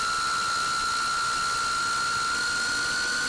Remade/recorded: recorded